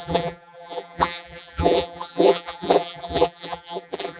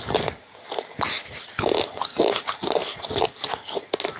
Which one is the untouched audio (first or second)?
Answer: second